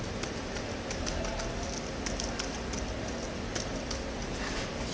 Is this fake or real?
real